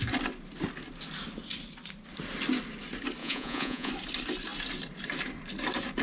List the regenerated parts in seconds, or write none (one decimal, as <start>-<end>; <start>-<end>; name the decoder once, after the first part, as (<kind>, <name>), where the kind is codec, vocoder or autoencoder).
3.2-3.9 (vocoder, Vocos)